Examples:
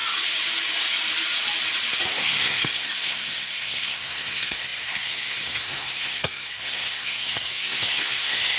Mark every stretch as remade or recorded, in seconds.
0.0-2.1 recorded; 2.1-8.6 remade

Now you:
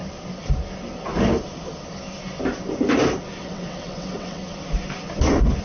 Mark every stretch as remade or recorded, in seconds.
0.0-3.4 recorded; 3.4-4.4 remade; 4.4-5.6 recorded